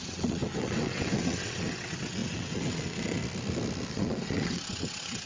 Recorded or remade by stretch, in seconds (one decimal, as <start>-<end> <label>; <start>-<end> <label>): 0.0-3.2 remade; 3.2-3.9 recorded; 3.9-5.3 remade

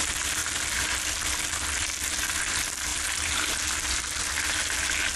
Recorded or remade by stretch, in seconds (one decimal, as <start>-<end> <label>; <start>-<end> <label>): 0.0-5.2 recorded